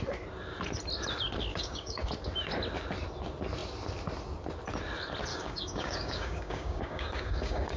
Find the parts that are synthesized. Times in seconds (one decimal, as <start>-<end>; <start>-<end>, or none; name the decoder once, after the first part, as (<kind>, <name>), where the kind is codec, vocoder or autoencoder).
1.5-2.1 (codec, DAC); 5.3-7.8